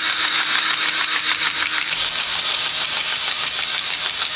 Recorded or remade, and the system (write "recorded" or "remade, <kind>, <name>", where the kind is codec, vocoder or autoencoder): remade, codec, DAC